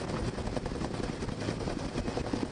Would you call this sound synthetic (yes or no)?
no